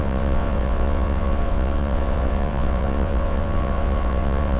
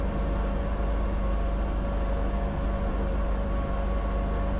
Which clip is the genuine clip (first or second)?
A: second